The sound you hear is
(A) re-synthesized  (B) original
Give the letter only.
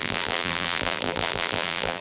A